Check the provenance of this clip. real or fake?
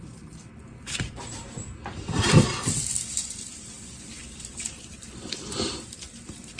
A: fake